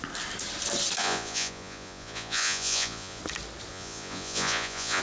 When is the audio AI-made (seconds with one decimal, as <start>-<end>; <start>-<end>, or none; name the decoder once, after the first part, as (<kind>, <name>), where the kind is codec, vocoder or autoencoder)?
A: 1.0-3.2 (vocoder, Vocos); 3.7-5.0